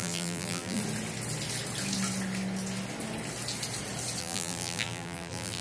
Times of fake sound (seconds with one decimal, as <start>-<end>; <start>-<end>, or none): 0.0-0.8; 4.2-5.6